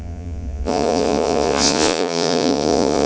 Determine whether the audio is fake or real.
fake